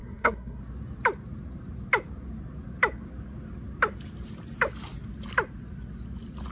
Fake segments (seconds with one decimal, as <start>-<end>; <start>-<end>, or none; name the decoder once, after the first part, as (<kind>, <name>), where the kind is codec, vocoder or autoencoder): 0.0-0.6 (codec, SNAC)